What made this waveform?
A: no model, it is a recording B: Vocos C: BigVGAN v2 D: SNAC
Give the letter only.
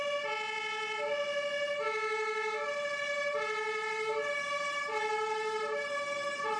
A